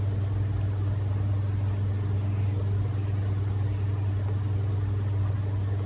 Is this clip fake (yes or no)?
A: no